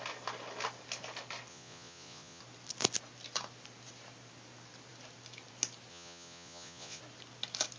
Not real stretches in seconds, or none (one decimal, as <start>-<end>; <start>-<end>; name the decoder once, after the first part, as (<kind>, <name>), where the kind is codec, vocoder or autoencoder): 1.5-2.4 (vocoder, Vocos); 5.9-7.0